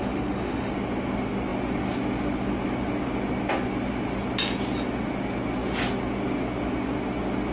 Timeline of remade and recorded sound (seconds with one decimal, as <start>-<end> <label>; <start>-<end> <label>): 0.0-0.7 remade; 0.7-7.5 recorded